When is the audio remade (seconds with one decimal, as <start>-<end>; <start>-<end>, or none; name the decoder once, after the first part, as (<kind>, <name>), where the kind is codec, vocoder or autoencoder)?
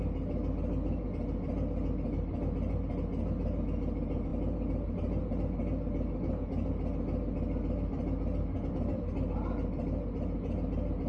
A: none